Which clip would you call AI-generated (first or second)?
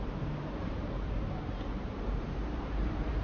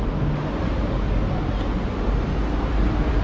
first